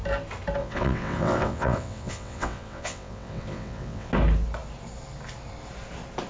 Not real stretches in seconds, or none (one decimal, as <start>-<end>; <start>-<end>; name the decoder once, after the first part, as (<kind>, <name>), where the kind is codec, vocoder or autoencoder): 0.6-4.1 (vocoder, WaveNeXt)

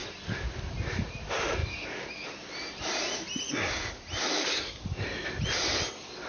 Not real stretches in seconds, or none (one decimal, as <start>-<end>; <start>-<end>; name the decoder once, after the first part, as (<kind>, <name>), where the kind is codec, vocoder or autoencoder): none

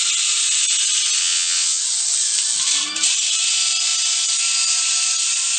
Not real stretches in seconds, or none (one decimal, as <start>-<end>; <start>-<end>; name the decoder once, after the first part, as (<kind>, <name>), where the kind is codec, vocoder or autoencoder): 1.2-1.8 (vocoder, WaveNeXt)

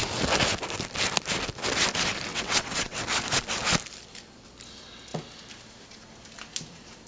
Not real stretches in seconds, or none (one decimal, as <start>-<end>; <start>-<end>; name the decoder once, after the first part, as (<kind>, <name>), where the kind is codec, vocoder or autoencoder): 2.3-3.0 (vocoder, WaveNeXt)

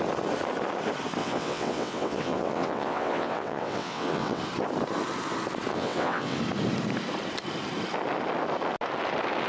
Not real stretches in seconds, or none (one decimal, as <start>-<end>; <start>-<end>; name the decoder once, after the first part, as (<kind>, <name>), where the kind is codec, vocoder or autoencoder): 1.2-4.4 (vocoder, WaveNeXt); 5.7-6.4

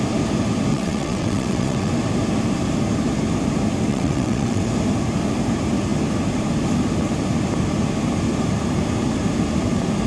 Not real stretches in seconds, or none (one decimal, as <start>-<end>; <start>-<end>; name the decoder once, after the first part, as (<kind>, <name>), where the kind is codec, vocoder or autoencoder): 0.7-1.9 (vocoder, WaveNeXt); 3.9-4.7

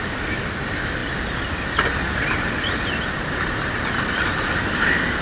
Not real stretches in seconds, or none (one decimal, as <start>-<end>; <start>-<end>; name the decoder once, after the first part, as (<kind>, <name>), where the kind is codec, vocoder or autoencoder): none

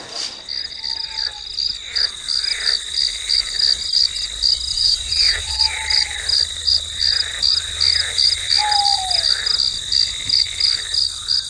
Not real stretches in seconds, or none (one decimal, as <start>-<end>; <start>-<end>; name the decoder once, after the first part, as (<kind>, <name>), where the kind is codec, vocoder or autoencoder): 4.7-5.6 (vocoder, WaveNeXt)